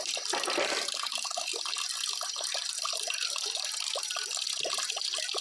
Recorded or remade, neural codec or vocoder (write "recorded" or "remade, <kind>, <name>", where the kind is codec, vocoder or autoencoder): recorded